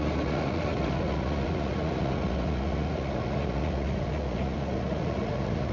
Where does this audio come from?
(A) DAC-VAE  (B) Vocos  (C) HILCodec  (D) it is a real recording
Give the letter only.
B